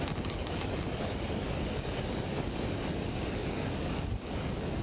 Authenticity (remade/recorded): remade